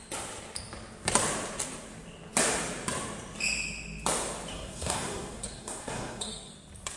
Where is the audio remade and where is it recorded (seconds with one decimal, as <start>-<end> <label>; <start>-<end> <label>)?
0.0-4.5 recorded; 4.5-6.5 remade; 6.5-7.0 recorded